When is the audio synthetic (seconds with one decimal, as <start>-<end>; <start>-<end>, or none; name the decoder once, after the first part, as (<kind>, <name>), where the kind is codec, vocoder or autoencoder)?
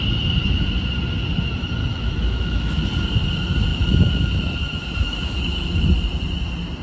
1.8-2.8 (autoencoder, DAC-VAE); 3.7-5.8